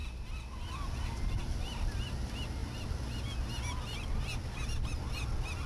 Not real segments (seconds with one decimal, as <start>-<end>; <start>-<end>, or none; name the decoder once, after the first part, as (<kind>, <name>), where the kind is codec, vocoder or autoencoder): none